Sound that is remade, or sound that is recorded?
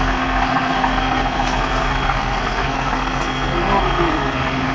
remade